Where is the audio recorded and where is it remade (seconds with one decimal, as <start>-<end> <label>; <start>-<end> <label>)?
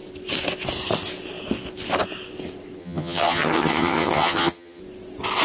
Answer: 0.0-2.8 recorded; 2.8-4.8 remade; 4.8-5.4 recorded